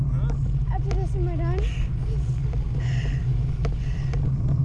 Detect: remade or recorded recorded